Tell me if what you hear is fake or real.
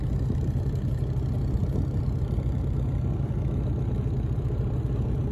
real